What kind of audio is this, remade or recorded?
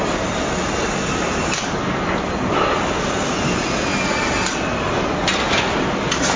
recorded